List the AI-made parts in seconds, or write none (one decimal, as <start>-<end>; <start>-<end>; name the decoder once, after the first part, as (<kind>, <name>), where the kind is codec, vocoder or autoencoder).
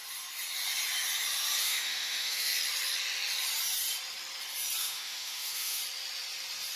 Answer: 1.6-2.5 (autoencoder, DAC-VAE); 4.8-5.8